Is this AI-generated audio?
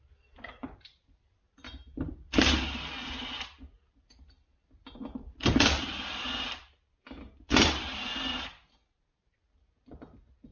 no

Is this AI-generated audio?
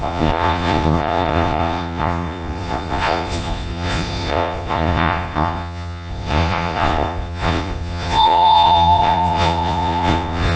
yes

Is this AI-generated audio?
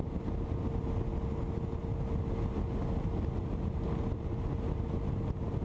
no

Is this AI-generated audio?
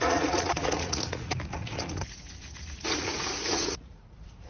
yes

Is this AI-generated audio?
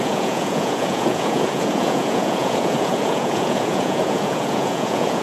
yes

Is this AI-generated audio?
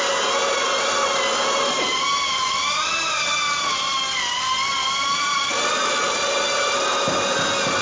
no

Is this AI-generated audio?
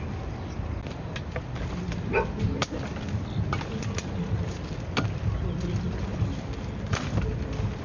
no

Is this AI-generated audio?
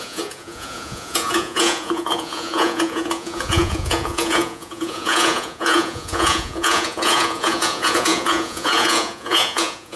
yes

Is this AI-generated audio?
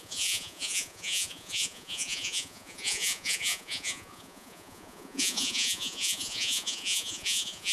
yes